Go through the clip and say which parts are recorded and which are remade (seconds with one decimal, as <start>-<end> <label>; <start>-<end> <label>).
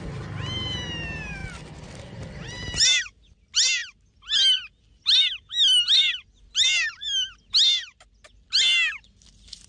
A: 0.0-9.7 recorded